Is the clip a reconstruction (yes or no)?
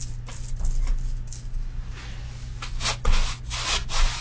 no